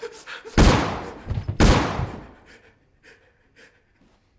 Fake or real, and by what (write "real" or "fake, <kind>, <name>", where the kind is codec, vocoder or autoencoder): real